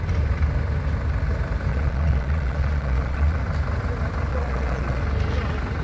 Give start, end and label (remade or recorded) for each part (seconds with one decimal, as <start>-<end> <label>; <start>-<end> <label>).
0.0-1.7 recorded; 1.7-3.4 remade; 3.4-4.3 recorded; 4.3-5.0 remade; 5.0-5.8 recorded